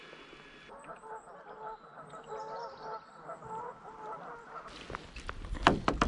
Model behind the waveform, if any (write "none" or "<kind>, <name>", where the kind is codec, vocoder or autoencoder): none